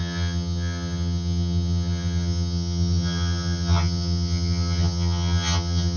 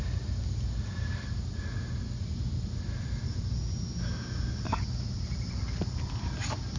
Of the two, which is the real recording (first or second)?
second